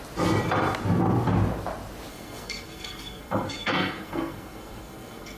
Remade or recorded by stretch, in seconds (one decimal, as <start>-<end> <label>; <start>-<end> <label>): 0.0-2.1 recorded; 2.1-5.4 remade